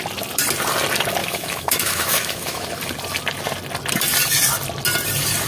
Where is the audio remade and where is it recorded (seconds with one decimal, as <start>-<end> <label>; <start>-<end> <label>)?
0.0-1.2 recorded; 1.2-2.7 remade; 2.7-5.5 recorded